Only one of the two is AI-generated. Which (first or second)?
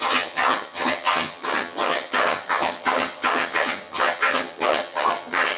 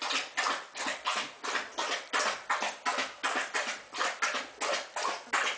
first